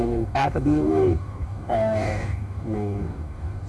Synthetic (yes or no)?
yes